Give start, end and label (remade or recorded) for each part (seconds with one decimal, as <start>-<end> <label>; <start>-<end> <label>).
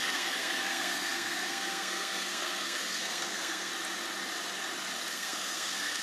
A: 0.0-3.7 remade; 3.7-5.1 recorded; 5.1-6.0 remade